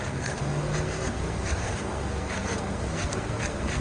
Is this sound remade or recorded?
remade